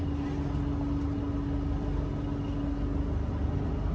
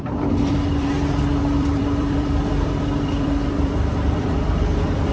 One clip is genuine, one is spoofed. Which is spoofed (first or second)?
second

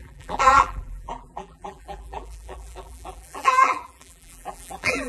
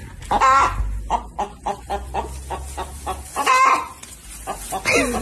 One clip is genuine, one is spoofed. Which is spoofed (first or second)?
first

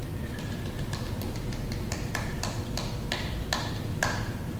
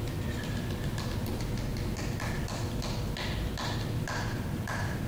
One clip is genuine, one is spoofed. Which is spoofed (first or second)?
first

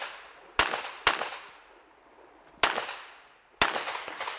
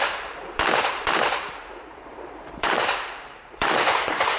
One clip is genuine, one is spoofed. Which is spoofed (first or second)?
second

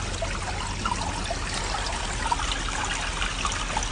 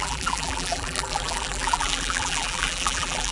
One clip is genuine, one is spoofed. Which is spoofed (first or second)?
second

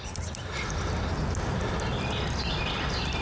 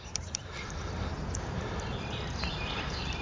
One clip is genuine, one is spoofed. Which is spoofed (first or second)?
second